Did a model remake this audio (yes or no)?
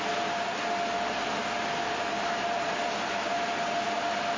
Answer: no